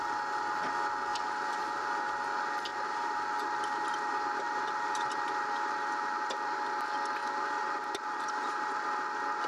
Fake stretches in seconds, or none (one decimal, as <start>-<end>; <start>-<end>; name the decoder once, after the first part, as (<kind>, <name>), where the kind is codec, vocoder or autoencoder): 1.1-2.1 (vocoder, BigVGAN v2); 2.7-6.6; 7.2-8.7